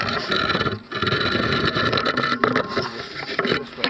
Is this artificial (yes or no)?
no